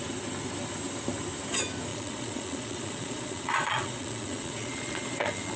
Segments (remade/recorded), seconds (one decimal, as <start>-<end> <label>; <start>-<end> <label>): 0.0-1.9 recorded; 1.9-5.6 remade